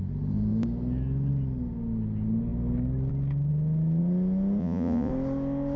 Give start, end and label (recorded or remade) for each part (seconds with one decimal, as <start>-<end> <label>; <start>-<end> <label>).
0.0-4.6 recorded; 4.6-5.1 remade; 5.1-5.8 recorded